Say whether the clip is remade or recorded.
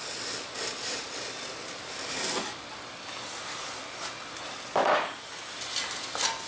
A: recorded